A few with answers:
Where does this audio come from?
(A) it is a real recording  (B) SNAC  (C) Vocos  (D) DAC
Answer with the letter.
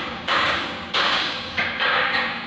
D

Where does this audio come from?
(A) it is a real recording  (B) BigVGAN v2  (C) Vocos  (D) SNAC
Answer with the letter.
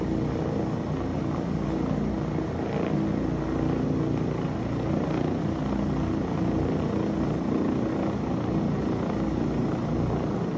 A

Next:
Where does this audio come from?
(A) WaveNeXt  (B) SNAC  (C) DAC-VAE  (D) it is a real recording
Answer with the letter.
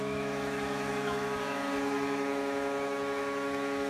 C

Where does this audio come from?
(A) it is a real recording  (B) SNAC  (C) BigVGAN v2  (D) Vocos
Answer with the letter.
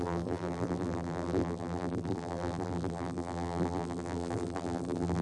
C